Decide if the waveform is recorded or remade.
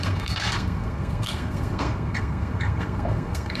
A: remade